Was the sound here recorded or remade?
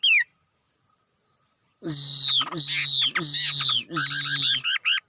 recorded